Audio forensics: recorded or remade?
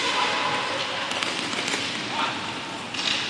recorded